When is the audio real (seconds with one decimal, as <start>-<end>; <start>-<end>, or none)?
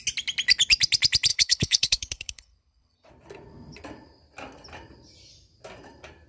0.0-1.3; 3.1-6.3